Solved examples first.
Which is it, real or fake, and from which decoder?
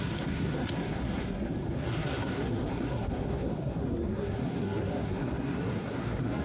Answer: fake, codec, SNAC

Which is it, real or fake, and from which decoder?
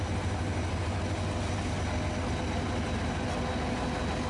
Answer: real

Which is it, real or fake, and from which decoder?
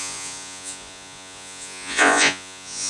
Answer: fake, vocoder, Vocos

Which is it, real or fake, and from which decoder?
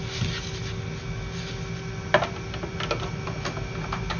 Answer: real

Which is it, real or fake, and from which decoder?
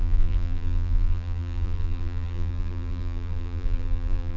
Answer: fake, vocoder, BigVGAN v2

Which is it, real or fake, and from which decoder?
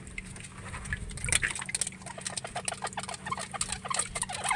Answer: real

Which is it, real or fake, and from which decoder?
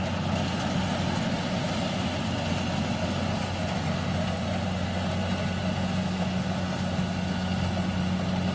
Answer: real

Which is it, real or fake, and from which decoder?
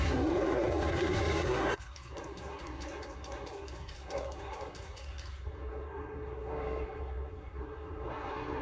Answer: fake, codec, SNAC